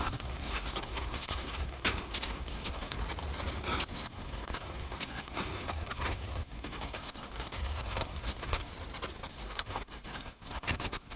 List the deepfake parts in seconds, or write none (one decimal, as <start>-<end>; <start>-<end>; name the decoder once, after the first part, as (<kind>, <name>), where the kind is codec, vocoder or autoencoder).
0.0-3.0 (codec, SNAC); 3.9-8.7; 9.3-11.2